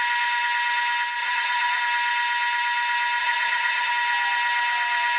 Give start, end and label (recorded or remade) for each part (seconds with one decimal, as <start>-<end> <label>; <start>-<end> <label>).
0.0-1.2 recorded; 1.2-1.8 remade; 1.8-3.2 recorded; 3.2-3.9 remade; 3.9-5.2 recorded